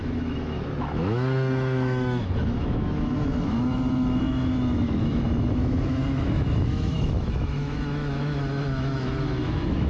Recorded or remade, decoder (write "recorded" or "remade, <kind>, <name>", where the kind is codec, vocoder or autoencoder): remade, autoencoder, DAC-VAE